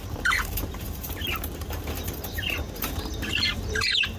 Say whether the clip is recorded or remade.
remade